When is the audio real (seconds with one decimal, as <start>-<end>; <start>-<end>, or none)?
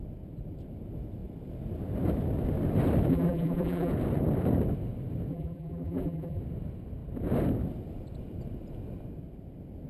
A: 0.0-3.1; 3.9-5.3; 6.4-9.9